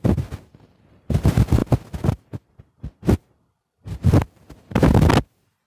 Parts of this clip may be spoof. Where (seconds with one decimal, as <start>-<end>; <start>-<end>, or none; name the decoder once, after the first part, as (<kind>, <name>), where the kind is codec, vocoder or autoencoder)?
none